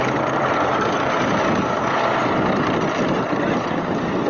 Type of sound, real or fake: fake